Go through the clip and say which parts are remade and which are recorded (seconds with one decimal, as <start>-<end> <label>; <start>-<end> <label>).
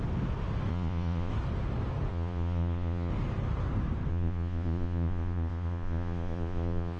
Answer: 0.0-0.7 recorded; 0.7-1.3 remade; 1.3-2.1 recorded; 2.1-3.1 remade; 3.1-4.1 recorded; 4.1-7.0 remade